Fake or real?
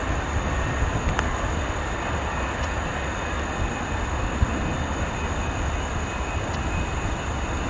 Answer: real